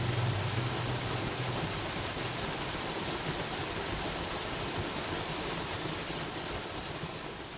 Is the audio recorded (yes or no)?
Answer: yes